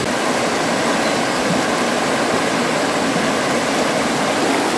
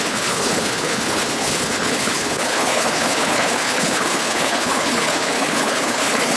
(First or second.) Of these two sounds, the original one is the first